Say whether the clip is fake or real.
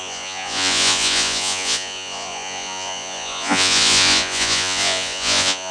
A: fake